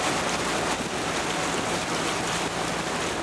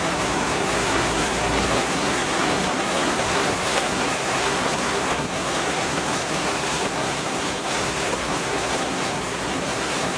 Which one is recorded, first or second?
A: first